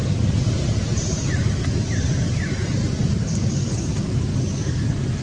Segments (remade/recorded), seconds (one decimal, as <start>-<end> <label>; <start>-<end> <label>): 0.0-3.9 remade; 3.9-5.2 recorded